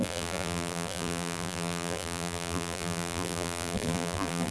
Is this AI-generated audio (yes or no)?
yes